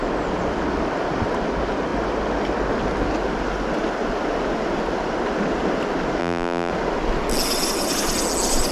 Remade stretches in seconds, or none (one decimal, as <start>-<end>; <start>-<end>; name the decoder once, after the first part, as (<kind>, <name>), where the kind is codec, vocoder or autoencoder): 6.2-6.7 (vocoder, BigVGAN v2)